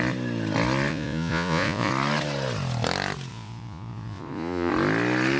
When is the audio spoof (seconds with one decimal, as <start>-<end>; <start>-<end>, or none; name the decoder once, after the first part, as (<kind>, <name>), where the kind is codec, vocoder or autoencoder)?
0.9-1.9 (vocoder, Vocos); 3.3-4.7